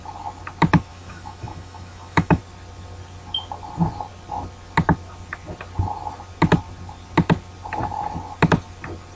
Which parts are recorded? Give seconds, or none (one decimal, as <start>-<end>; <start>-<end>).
0.0-0.9; 2.4-9.2